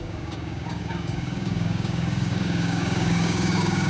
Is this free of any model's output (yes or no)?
no